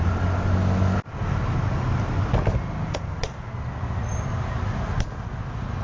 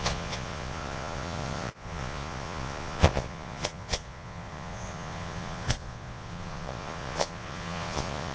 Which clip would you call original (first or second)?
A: first